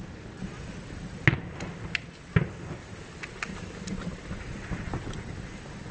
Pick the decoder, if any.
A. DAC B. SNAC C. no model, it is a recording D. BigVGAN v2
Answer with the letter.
C